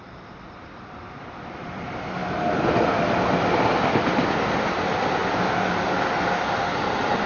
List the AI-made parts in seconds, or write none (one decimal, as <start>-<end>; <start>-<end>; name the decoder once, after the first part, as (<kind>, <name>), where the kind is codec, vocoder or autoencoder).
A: 0.0-2.2 (vocoder, BigVGAN v2); 3.7-5.2; 6.7-7.3